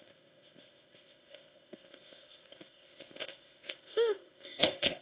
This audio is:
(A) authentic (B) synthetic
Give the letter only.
B